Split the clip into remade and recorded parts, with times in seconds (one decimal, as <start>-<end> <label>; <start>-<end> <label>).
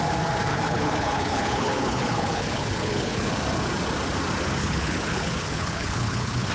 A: 0.0-0.5 recorded; 0.5-3.3 remade; 3.3-4.6 recorded; 4.6-6.5 remade